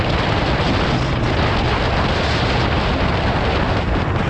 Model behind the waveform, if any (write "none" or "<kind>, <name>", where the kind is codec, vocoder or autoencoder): none